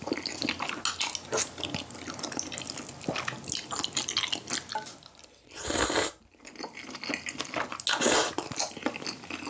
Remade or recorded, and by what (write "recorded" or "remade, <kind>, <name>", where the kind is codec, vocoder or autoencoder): recorded